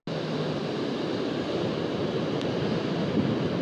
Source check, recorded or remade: recorded